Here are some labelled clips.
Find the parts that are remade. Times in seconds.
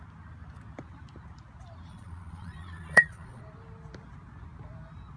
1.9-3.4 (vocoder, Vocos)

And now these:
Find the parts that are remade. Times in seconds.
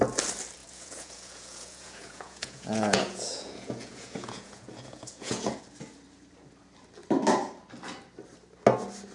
0.6-5.6 (vocoder, Vocos)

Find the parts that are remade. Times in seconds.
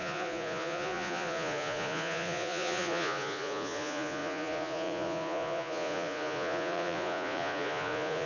0.0-8.3 (vocoder, Vocos)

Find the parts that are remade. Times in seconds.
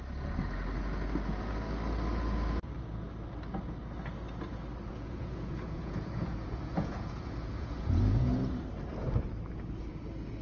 4.9-8.5 (vocoder, Vocos)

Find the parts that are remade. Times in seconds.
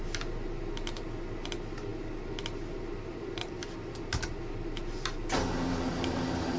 none